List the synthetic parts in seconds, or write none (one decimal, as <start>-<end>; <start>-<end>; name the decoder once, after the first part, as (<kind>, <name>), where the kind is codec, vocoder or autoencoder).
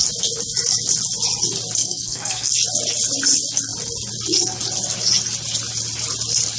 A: 1.8-2.5 (codec, SNAC)